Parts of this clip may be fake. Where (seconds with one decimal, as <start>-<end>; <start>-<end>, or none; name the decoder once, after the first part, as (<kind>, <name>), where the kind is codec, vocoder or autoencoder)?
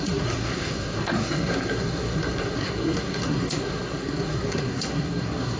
0.0-5.6 (codec, SNAC)